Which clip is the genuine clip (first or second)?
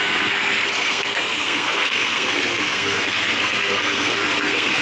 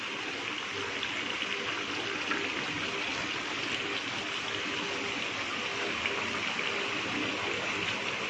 second